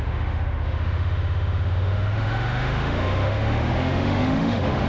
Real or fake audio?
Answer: fake